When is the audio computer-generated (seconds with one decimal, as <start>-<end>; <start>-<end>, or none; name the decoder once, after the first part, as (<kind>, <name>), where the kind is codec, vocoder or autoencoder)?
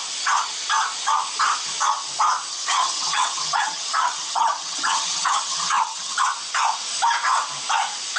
2.5-6.2 (vocoder, HiFi-GAN)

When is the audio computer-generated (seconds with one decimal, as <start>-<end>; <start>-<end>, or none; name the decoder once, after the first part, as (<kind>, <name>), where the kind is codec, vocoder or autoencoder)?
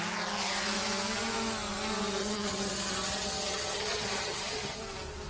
2.2-4.8 (vocoder, HiFi-GAN)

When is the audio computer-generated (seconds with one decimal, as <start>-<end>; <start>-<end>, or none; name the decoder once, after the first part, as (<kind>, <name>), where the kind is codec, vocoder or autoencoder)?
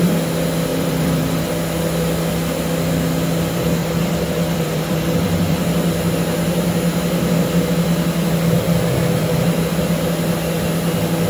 0.7-1.5 (vocoder, BigVGAN v2); 3.8-5.6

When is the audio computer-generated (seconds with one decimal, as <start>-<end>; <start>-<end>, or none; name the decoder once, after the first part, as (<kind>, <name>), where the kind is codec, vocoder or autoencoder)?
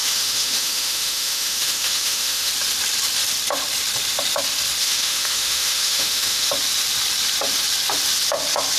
0.0-2.5 (autoencoder, DAC-VAE); 4.8-6.5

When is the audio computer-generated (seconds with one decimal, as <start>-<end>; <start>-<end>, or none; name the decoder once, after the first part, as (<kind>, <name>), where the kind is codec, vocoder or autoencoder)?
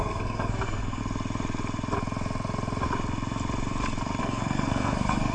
0.0-1.0 (codec, SNAC); 4.2-5.3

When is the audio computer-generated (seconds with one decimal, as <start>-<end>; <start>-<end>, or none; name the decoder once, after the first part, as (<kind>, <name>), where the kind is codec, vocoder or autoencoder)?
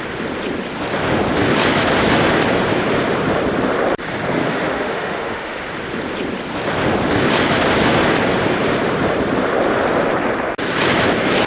4.4-5.6 (autoencoder, DAC-VAE)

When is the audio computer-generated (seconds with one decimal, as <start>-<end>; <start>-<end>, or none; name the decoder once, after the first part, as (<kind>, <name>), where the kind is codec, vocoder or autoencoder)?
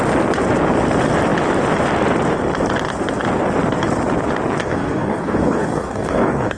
4.6-6.6 (codec, DAC)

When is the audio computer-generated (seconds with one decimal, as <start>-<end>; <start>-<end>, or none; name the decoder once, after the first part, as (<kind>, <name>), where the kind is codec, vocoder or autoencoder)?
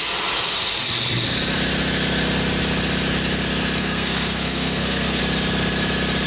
3.8-5.2 (codec, SNAC)